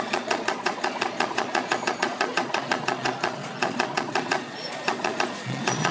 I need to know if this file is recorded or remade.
remade